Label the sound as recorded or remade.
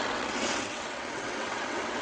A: remade